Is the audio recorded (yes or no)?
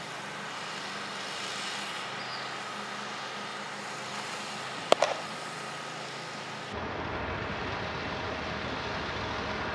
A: yes